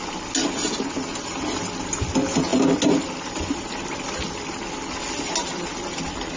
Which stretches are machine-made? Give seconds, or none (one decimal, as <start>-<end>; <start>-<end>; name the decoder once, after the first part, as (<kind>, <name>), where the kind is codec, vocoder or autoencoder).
none